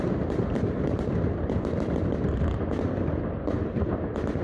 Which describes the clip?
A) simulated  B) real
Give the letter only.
B